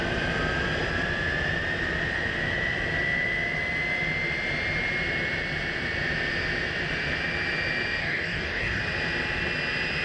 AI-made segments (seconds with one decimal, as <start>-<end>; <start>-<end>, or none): 8.0-8.8